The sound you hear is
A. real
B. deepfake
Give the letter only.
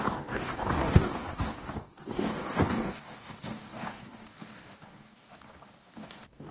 B